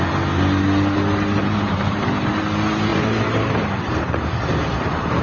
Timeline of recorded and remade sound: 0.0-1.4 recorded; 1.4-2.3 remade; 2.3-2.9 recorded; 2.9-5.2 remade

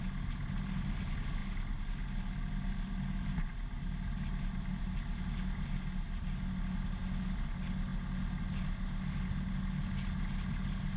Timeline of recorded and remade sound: 0.0-11.0 recorded

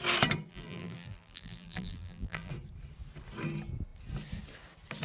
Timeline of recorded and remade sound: 0.0-0.5 recorded; 0.5-2.5 remade; 2.5-5.0 recorded

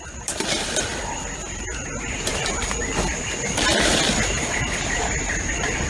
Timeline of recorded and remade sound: 0.0-5.9 recorded

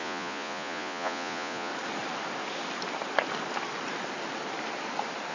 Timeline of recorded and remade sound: 0.0-1.7 remade; 1.7-5.3 recorded

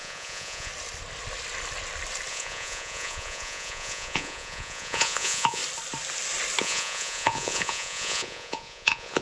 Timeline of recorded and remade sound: 0.0-0.7 remade; 0.7-2.3 recorded; 2.3-5.6 remade; 5.6-6.6 recorded; 6.6-9.2 remade

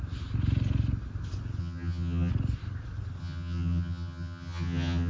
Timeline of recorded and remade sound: 0.0-1.6 recorded; 1.6-2.3 remade; 2.3-3.2 recorded; 3.2-5.1 remade